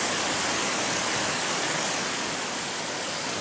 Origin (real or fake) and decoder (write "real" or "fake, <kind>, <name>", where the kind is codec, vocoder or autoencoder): fake, codec, DAC